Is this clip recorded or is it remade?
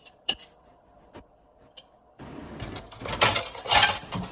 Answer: recorded